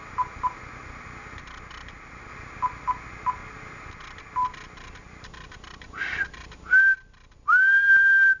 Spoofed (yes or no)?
no